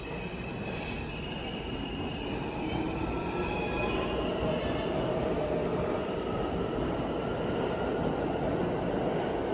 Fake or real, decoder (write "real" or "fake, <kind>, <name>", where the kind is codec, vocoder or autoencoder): real